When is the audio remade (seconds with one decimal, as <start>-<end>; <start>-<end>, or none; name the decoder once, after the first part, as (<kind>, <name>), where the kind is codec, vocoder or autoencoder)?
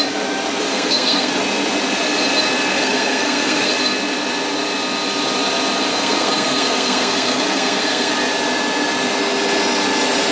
0.7-1.3 (codec, SNAC); 2.7-3.7; 5.9-8.1